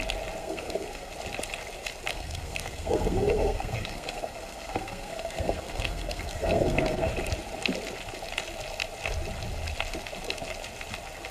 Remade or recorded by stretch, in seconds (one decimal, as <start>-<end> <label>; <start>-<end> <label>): 0.0-0.4 recorded; 0.4-1.1 remade; 1.1-2.1 recorded; 2.1-7.1 remade; 7.1-11.3 recorded

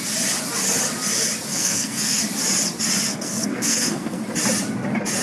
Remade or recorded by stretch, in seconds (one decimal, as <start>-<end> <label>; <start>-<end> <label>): 0.0-1.5 recorded; 1.5-2.2 remade; 2.2-3.1 recorded; 3.1-4.2 remade; 4.2-5.2 recorded